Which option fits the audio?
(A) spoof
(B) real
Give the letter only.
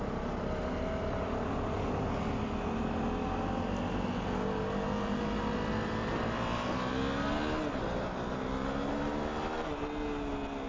B